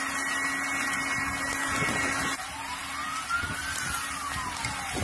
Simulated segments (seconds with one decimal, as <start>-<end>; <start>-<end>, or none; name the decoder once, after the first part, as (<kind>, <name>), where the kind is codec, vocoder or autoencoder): none